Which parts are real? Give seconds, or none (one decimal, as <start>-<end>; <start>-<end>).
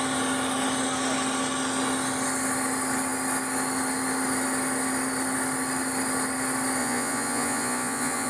0.0-6.8